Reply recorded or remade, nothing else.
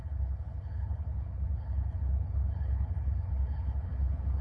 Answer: remade